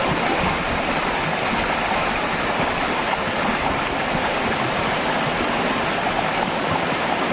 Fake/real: real